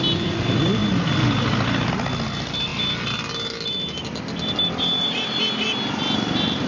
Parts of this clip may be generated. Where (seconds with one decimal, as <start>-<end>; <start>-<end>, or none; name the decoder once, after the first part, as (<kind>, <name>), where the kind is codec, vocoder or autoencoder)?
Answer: none